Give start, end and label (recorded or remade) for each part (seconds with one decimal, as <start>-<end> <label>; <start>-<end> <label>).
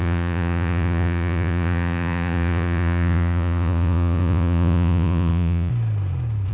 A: 0.0-5.7 remade; 5.7-6.5 recorded